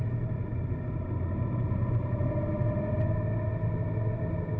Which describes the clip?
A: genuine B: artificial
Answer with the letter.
A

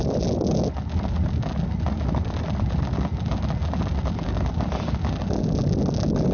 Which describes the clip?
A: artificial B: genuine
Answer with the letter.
B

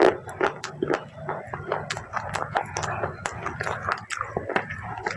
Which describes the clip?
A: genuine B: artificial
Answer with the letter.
A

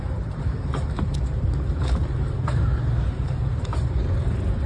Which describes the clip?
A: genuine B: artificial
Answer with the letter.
B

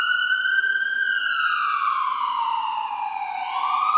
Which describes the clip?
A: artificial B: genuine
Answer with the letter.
B